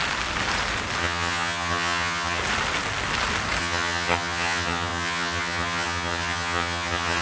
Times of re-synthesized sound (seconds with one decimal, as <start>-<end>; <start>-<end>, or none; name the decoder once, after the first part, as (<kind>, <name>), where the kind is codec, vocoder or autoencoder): 1.0-2.4 (vocoder, HiFi-GAN); 3.6-7.2